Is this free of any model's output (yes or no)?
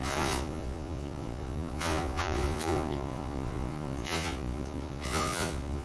no